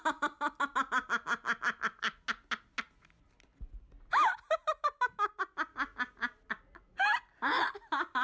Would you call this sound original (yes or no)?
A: yes